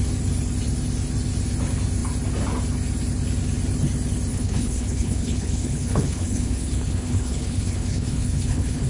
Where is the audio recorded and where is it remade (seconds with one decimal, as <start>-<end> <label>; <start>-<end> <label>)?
0.0-4.3 recorded; 4.3-8.9 remade